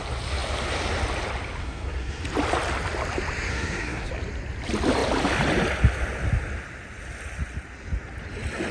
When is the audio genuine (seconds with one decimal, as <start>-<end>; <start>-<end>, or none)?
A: 0.0-1.6; 2.2-3.5; 4.1-8.7

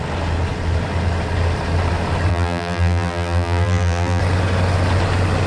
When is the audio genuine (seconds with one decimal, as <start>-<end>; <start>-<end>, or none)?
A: 0.0-2.3; 4.2-5.5

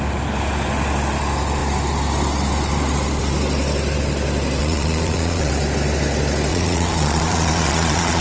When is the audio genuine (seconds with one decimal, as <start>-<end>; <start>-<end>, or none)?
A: 0.0-4.6; 5.5-6.5

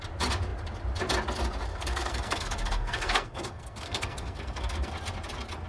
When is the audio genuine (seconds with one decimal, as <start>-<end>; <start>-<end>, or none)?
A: 0.0-1.7; 4.9-5.7

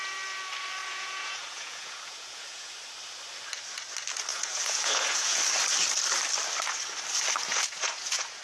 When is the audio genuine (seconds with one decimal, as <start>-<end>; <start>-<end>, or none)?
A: 0.0-0.8; 2.7-4.3; 5.4-7.5

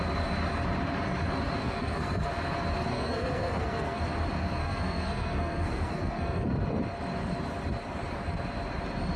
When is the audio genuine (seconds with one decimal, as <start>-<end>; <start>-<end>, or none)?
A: 0.0-1.6; 2.3-2.9; 4.0-4.6; 6.6-9.2